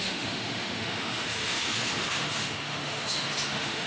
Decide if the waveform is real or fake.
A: fake